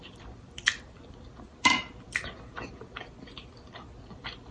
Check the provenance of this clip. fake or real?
fake